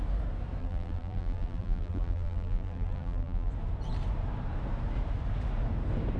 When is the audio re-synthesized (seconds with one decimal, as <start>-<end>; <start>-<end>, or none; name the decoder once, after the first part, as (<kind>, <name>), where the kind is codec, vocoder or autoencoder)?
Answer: 0.6-3.5 (vocoder, BigVGAN v2)